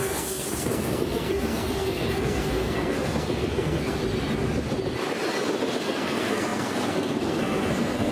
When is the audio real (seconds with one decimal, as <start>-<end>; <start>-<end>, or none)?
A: 4.0-5.8